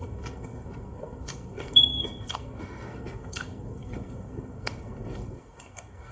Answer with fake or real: fake